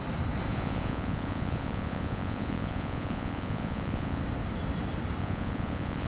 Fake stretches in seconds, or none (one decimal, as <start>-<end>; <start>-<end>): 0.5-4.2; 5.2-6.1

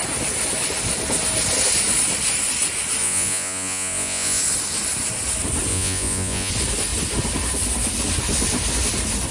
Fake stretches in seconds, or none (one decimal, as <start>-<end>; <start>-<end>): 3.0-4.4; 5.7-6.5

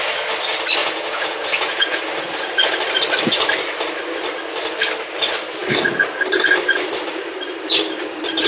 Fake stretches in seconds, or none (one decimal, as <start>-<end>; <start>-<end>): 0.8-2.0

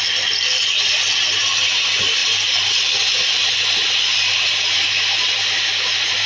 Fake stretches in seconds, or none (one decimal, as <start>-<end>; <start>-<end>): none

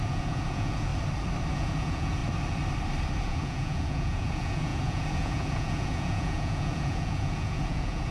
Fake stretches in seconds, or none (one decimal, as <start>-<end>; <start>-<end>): 0.0-0.9; 1.5-2.2; 3.2-8.1